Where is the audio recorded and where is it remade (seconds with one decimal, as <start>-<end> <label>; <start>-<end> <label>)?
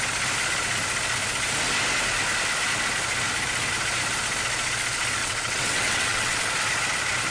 0.0-5.2 recorded; 5.2-6.5 remade; 6.5-7.3 recorded